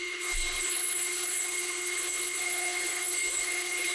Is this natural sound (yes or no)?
no